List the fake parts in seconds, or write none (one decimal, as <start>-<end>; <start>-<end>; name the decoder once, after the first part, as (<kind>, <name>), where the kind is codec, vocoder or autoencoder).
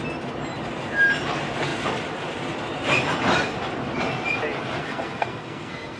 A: 4.8-6.0 (codec, SNAC)